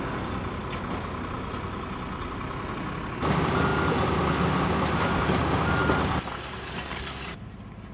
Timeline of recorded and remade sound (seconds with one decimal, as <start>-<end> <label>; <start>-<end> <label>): 0.0-7.9 recorded

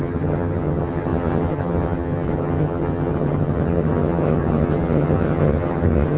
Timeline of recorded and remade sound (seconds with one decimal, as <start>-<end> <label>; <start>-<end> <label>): 0.0-6.2 remade

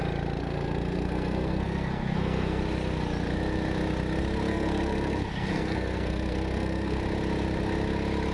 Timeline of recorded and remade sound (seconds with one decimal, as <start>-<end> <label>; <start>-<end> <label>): 0.0-0.4 recorded; 0.4-2.6 remade; 2.6-4.5 recorded; 4.5-7.0 remade; 7.0-8.3 recorded

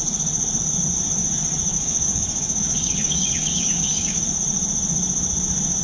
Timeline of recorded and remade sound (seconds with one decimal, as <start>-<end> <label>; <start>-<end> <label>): 0.0-1.7 recorded; 1.7-4.2 remade; 4.2-5.8 recorded